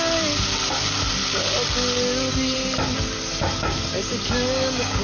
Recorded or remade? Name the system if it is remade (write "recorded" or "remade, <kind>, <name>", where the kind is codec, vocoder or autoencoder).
recorded